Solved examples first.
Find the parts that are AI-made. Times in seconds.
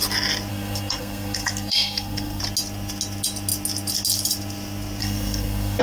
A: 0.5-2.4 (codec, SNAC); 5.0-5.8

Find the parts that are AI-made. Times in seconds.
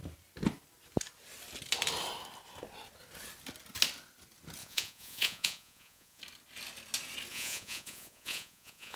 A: 4.6-6.2 (vocoder, Vocos); 7.3-9.0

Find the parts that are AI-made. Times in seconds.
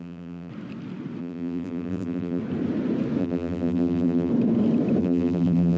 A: 0.0-0.5 (vocoder, BigVGAN v2); 1.2-2.4; 3.2-4.3; 5.0-5.8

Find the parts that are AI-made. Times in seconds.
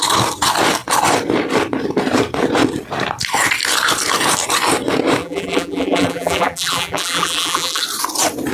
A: 5.2-7.8 (vocoder, BigVGAN v2)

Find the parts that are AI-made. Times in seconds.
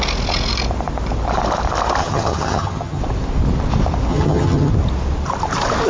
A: 2.0-3.0 (vocoder, HiFi-GAN); 4.1-4.7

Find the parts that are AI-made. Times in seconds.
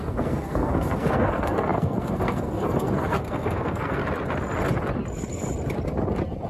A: 0.0-4.0 (codec, SNAC)